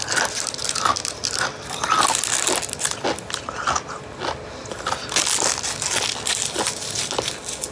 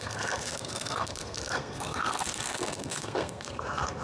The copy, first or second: second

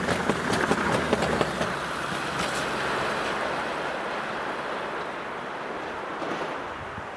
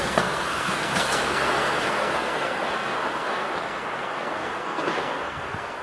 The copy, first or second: second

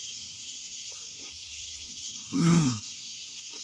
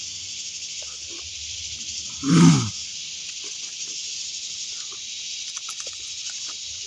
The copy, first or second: first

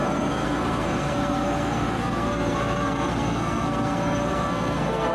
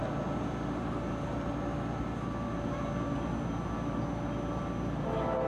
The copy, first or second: first